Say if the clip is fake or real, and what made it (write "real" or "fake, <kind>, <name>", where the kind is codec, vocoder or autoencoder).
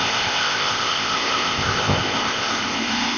fake, codec, ZipCodec